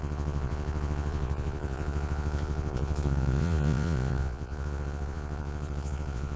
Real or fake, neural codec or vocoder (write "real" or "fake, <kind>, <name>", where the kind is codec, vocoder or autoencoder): fake, vocoder, Vocos